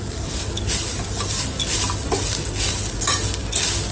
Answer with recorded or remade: recorded